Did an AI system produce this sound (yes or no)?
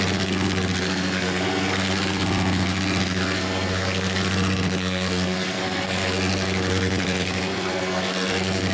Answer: yes